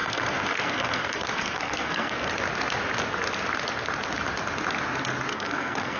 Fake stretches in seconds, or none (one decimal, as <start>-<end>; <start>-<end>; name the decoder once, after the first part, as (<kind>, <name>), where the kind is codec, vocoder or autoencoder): 0.0-2.3 (codec, SNAC); 5.3-6.0

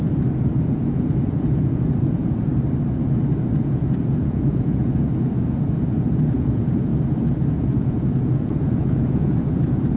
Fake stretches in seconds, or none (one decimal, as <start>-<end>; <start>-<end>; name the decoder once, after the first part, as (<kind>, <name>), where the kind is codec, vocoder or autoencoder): 0.0-2.5 (vocoder, Vocos); 3.6-6.9; 7.5-10.0

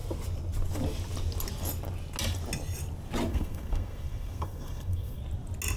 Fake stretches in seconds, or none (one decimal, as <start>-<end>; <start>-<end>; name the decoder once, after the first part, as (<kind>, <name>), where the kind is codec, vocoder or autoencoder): 3.3-5.2 (codec, SNAC)